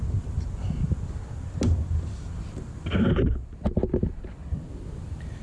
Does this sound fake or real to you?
real